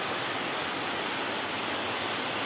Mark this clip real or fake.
real